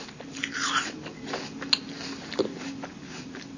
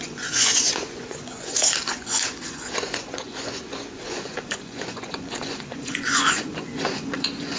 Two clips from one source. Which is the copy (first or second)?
second